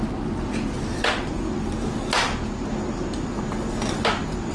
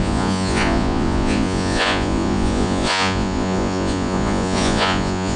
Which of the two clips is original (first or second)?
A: first